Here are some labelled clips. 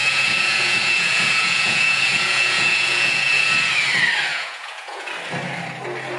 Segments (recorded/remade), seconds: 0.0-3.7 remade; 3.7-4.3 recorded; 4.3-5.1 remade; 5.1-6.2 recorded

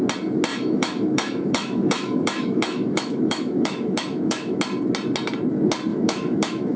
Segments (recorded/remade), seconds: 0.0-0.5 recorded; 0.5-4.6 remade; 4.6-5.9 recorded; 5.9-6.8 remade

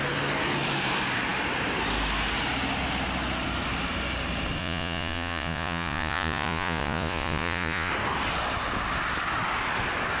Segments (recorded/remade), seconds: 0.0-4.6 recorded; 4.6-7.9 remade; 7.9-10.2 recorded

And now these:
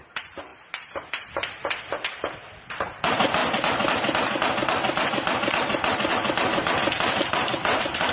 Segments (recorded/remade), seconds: 0.0-8.1 recorded